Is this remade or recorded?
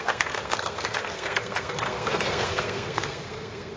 remade